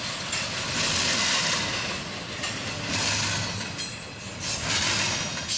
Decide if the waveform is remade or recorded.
recorded